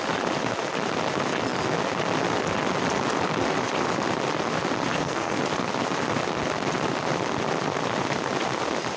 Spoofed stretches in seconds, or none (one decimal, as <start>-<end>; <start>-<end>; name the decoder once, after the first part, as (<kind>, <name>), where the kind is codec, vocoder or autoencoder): 4.9-5.4 (codec, SNAC)